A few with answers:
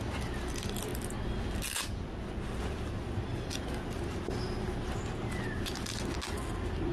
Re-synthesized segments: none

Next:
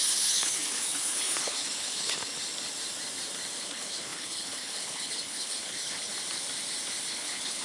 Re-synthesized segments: 0.0-2.3 (codec, HILCodec); 3.5-6.1; 7.1-7.6

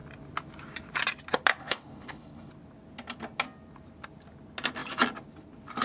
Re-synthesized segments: 1.6-2.5 (codec, HILCodec)